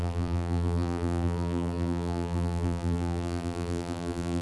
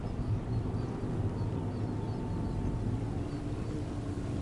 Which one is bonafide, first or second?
second